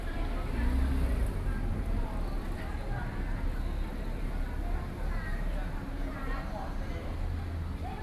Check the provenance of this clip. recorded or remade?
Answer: recorded